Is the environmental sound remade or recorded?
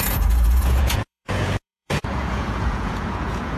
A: remade